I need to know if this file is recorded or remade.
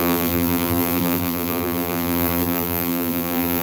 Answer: remade